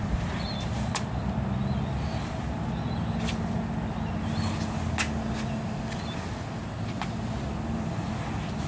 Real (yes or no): yes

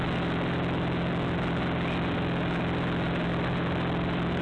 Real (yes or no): yes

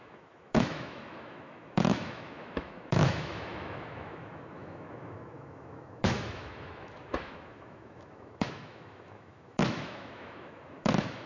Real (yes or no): no